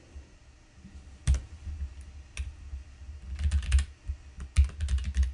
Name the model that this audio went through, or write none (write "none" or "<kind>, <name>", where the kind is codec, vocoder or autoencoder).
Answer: none